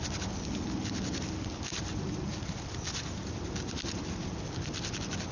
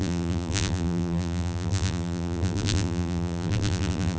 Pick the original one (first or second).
first